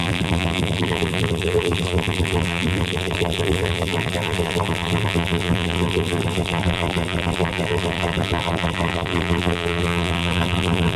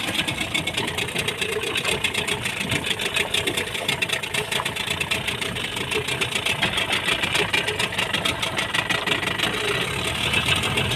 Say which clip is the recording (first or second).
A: second